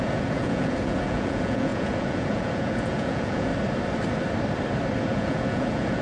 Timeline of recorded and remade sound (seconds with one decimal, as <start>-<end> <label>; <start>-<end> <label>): 0.0-3.5 remade; 3.5-5.0 recorded; 5.0-6.0 remade